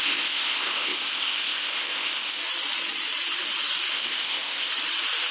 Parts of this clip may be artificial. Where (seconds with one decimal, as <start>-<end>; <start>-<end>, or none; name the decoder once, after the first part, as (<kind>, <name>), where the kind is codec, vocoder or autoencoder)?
0.0-2.4 (codec, ZipCodec); 3.9-4.7